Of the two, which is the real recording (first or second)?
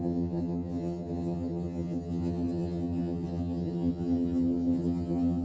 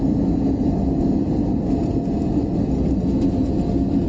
second